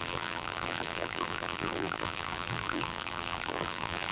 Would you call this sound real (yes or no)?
no